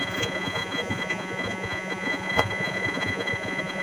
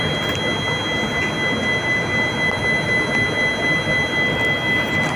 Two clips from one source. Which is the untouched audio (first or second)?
second